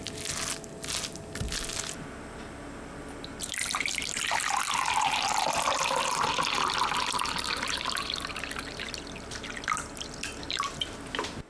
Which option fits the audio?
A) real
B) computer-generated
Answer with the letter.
A